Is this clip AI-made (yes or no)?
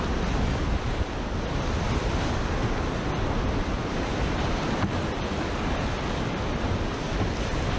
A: no